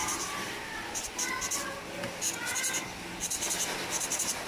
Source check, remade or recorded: recorded